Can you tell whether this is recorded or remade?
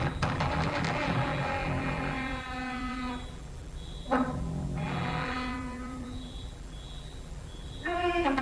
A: remade